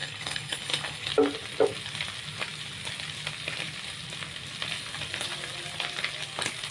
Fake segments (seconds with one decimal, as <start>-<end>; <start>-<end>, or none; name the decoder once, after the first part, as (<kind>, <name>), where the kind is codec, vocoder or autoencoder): 0.0-1.1 (codec, HILCodec)